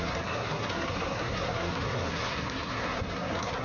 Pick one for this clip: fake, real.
fake